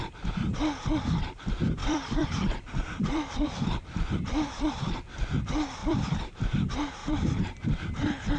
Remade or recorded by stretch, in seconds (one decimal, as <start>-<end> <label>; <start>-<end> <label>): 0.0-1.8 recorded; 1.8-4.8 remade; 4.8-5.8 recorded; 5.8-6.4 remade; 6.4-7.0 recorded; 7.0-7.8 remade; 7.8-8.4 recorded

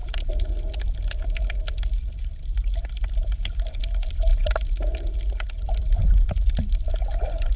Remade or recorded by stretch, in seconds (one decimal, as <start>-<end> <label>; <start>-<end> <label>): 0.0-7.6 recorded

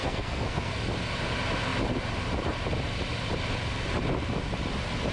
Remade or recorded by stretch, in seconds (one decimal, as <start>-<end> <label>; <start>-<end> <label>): 0.0-0.7 remade; 0.7-5.1 recorded